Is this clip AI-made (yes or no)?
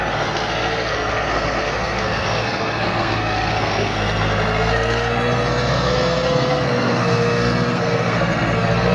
yes